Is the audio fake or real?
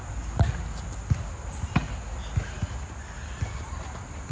real